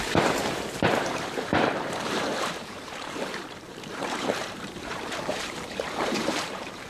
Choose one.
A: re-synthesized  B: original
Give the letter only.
A